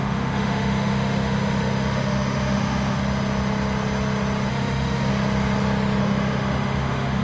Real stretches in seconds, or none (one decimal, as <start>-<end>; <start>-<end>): 3.0-4.5; 5.1-6.0

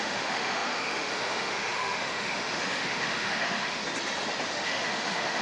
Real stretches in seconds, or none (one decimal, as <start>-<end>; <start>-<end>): 3.8-4.5

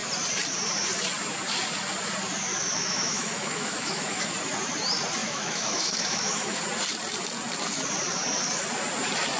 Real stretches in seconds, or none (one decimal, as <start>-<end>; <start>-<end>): 0.0-2.5; 4.3-5.2; 6.6-9.4

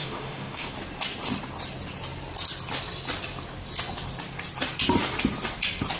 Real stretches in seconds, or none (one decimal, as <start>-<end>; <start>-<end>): 0.7-6.0

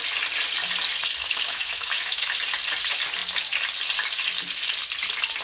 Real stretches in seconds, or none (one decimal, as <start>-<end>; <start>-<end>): 0.0-1.2; 2.4-5.4

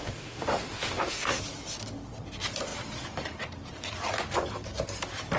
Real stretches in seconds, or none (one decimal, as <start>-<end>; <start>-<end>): 1.4-5.4